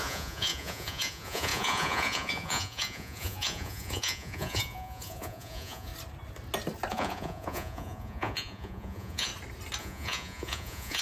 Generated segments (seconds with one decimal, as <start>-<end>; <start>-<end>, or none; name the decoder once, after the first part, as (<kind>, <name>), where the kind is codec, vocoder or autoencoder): 0.0-5.9 (vocoder, Vocos); 6.9-9.3; 9.8-11.0